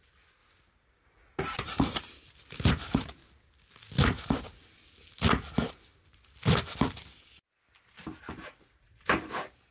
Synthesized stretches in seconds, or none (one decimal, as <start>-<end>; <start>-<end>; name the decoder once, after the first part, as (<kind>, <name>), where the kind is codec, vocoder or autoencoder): 0.0-0.4 (vocoder, BigVGAN v2); 2.7-3.2; 8.2-9.7